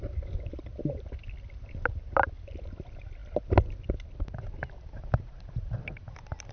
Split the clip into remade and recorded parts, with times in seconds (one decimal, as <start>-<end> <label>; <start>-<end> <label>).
0.0-6.5 recorded